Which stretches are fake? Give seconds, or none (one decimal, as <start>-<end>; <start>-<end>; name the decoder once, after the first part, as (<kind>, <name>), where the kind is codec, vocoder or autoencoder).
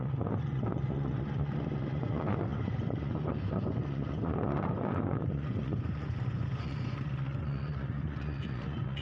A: 0.0-9.0 (vocoder, Vocos)